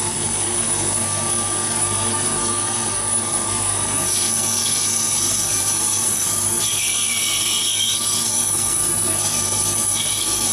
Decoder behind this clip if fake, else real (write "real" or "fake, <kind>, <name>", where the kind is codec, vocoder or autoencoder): fake, codec, SNAC